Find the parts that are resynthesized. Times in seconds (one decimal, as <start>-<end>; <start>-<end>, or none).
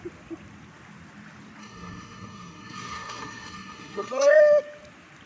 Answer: 1.6-4.4